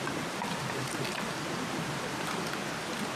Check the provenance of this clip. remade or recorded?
recorded